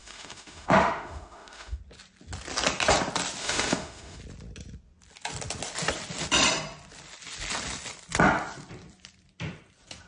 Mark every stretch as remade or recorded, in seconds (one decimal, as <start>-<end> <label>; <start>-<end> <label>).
0.0-1.8 remade; 1.8-3.4 recorded; 3.4-4.2 remade; 4.2-10.1 recorded